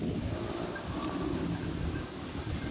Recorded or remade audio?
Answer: recorded